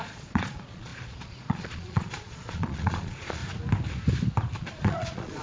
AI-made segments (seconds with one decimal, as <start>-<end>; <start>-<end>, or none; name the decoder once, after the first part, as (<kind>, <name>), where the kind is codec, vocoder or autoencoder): 0.0-3.4 (vocoder, Vocos); 4.6-5.4